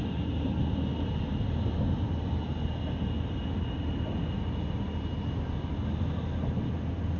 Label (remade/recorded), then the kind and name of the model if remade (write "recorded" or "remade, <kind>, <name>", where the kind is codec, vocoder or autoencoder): recorded